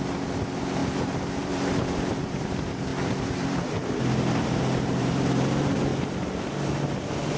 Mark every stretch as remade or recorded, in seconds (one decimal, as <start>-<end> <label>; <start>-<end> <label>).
0.0-5.9 remade; 5.9-7.0 recorded; 7.0-7.4 remade

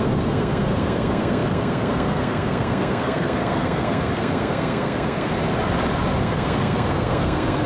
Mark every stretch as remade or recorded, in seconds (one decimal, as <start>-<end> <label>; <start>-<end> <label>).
0.0-5.3 remade; 5.3-6.2 recorded; 6.2-7.7 remade